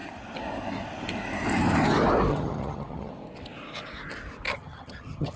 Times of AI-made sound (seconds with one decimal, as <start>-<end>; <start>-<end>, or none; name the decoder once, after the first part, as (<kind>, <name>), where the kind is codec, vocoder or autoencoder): 2.3-3.1 (vocoder, HiFi-GAN); 4.5-5.4